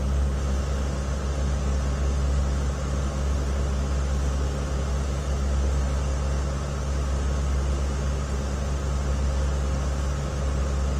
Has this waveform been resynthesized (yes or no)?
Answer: no